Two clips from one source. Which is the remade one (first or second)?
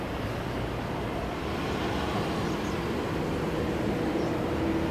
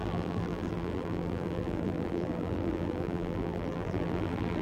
second